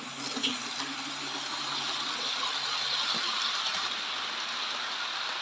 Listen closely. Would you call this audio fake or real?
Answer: real